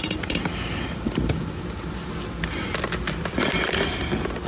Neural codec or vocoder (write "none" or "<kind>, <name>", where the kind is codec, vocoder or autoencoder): none